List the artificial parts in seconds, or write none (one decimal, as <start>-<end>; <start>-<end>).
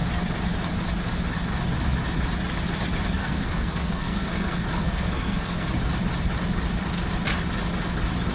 3.2-5.7